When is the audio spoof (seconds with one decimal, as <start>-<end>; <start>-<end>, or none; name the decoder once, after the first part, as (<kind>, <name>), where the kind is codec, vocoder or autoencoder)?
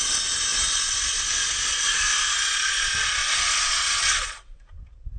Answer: 3.2-4.6 (vocoder, WaveNeXt)